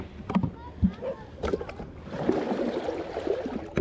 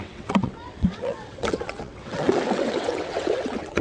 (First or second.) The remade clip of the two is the second